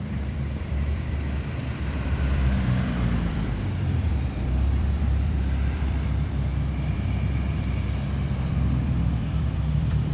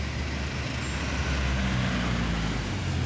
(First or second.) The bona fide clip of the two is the second